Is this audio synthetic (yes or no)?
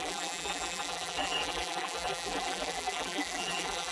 yes